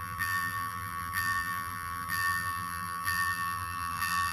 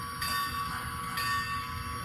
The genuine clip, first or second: second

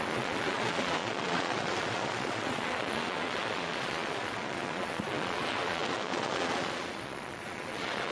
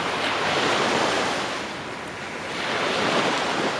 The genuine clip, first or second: second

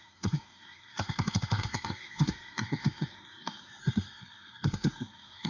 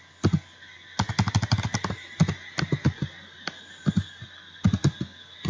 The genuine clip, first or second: second